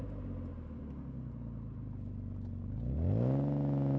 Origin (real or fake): real